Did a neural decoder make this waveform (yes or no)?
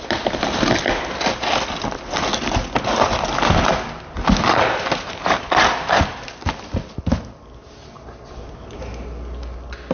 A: no